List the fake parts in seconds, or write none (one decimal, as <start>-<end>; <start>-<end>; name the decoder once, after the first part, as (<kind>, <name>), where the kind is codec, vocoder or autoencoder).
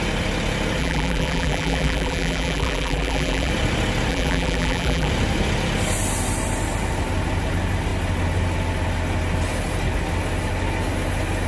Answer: 0.8-3.5 (vocoder, BigVGAN v2); 4.1-5.1